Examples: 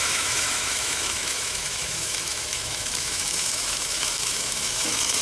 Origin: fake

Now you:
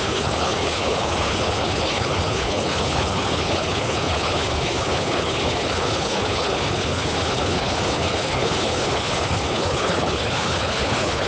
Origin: fake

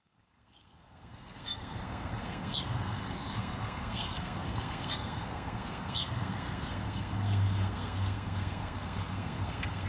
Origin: fake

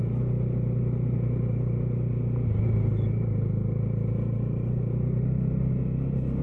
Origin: real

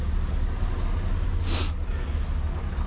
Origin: real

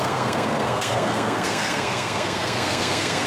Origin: fake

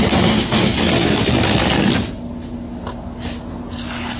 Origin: real